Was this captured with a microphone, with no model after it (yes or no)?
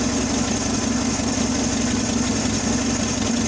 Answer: yes